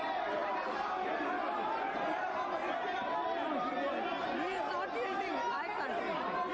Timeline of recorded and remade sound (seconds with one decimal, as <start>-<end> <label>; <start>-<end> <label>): 0.0-6.5 recorded